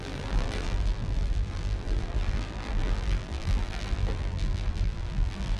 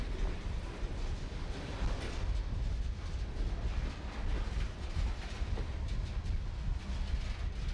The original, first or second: second